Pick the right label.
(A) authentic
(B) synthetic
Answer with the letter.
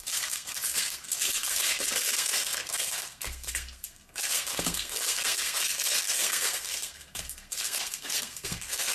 B